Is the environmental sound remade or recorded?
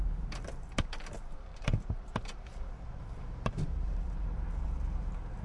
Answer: remade